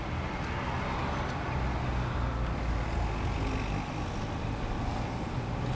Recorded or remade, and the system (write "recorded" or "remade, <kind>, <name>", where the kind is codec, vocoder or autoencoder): recorded